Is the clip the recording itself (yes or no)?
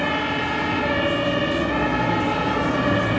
yes